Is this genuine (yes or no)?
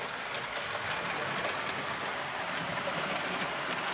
yes